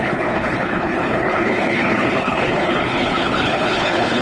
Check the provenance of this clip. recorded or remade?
remade